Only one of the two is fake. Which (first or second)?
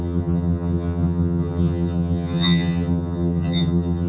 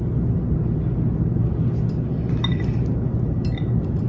first